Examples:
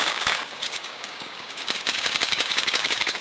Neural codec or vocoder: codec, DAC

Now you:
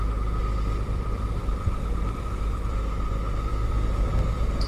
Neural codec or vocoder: vocoder, BigVGAN v2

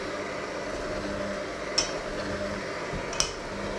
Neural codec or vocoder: none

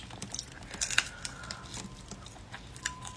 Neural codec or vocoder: none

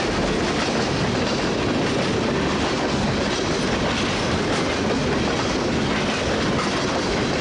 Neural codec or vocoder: none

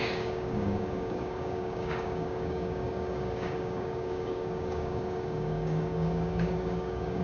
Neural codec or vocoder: codec, DAC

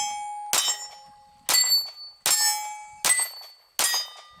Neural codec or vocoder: none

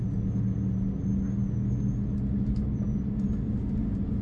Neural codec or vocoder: none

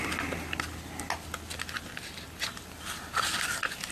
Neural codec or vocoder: none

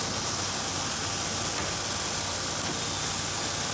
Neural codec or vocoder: none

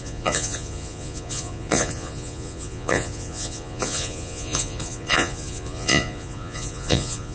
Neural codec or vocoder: vocoder, Vocos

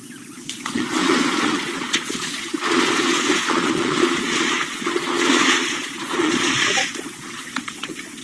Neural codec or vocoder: vocoder, Vocos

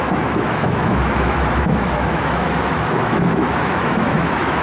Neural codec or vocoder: autoencoder, DAC-VAE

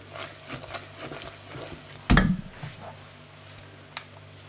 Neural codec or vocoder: none